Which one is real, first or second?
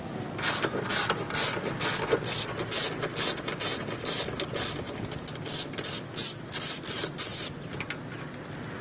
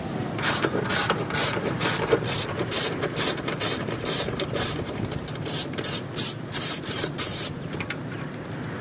first